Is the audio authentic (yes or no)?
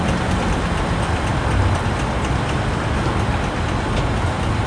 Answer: yes